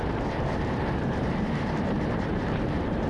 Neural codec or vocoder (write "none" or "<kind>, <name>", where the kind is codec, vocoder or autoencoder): vocoder, BigVGAN v2